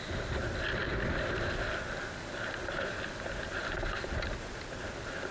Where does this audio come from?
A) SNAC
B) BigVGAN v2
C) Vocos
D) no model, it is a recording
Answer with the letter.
D